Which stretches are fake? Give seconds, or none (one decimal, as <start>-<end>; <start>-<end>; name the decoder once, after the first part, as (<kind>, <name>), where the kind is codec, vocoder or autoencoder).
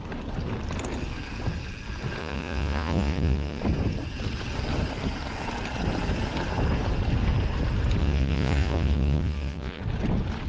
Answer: 2.2-3.6 (vocoder, Vocos); 8.0-9.8